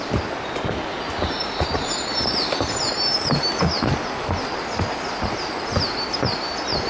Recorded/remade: recorded